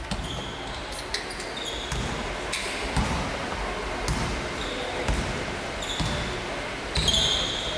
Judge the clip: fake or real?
real